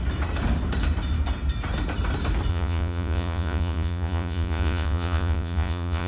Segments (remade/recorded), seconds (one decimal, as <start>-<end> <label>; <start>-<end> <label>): 0.0-2.5 recorded; 2.5-6.1 remade